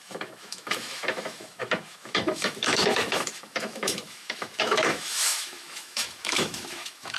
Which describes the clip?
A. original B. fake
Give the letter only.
B